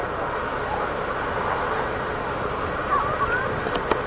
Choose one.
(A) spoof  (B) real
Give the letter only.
B